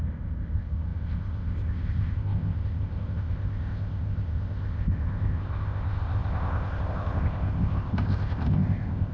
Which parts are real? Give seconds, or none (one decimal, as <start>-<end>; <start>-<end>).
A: none